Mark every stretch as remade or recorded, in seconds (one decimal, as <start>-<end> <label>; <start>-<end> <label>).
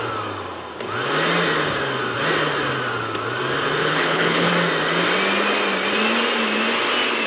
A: 0.0-3.8 recorded; 3.8-4.5 remade; 4.5-7.3 recorded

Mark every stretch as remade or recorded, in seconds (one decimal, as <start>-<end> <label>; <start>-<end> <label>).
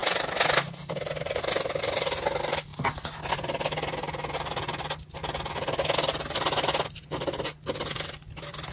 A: 0.0-8.7 recorded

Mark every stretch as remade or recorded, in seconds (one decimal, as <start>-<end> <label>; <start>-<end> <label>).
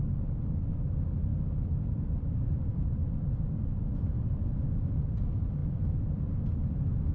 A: 0.0-1.3 recorded; 1.3-2.6 remade; 2.6-7.1 recorded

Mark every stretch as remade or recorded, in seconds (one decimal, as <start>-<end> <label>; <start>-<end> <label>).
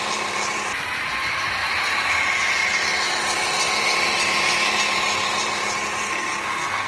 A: 0.0-6.0 recorded; 6.0-6.9 remade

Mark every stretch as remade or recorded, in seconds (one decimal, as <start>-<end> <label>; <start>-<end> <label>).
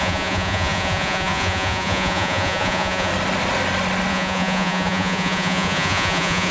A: 0.0-3.1 remade; 3.1-4.1 recorded; 4.1-6.5 remade